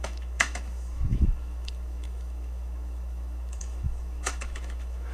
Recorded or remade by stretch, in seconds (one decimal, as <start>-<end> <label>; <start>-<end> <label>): 0.0-5.1 remade